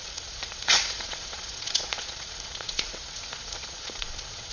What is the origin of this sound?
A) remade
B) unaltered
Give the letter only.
A